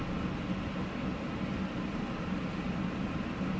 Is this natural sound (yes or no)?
yes